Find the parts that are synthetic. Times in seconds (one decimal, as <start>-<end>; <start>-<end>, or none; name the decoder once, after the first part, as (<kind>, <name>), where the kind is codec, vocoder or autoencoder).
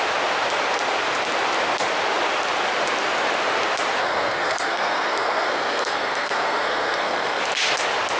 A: 4.0-7.4 (codec, SNAC)